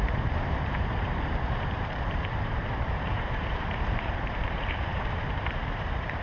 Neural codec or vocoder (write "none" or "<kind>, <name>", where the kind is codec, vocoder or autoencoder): vocoder, BigVGAN v2